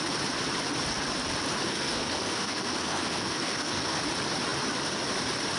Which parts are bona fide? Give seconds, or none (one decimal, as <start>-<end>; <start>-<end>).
0.0-1.7; 4.0-5.6